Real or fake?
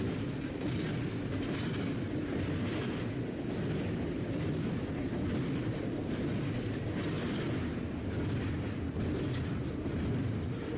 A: real